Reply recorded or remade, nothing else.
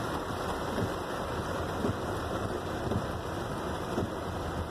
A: remade